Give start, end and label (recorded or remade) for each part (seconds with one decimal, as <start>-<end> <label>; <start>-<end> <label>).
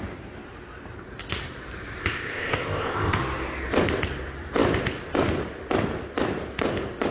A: 0.0-2.0 recorded; 2.0-3.2 remade; 3.2-7.1 recorded